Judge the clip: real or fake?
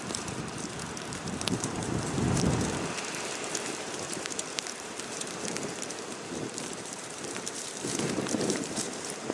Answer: fake